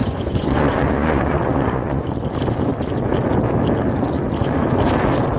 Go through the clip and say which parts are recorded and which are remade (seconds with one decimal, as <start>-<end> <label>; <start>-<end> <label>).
0.0-2.1 remade; 2.1-5.4 recorded

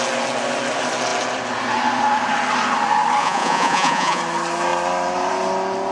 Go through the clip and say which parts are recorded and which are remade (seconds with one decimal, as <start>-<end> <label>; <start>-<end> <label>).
0.0-3.2 recorded; 3.2-4.2 remade; 4.2-5.9 recorded

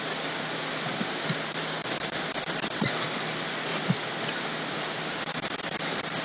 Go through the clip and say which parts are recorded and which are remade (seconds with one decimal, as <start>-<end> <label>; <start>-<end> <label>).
0.0-6.2 recorded

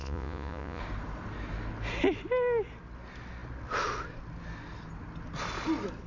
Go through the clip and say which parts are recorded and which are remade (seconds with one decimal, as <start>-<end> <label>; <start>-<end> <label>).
0.0-0.8 remade; 0.8-6.1 recorded

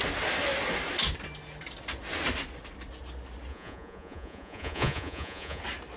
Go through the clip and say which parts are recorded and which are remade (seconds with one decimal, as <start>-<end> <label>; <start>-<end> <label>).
0.0-3.5 recorded; 3.5-5.6 remade; 5.6-6.0 recorded

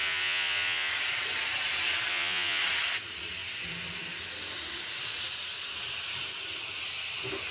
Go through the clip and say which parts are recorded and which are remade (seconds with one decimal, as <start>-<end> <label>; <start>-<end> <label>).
0.0-0.9 remade; 0.9-2.1 recorded; 2.1-2.6 remade; 2.6-7.5 recorded